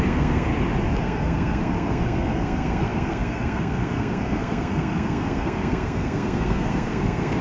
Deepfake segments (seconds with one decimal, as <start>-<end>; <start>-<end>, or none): 0.0-0.5; 1.0-7.4